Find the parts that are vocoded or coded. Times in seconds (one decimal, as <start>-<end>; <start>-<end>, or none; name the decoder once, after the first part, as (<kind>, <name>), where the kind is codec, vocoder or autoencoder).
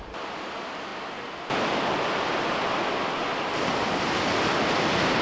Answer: none